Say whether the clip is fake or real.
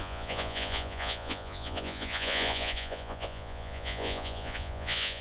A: fake